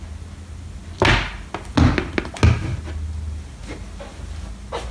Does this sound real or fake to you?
real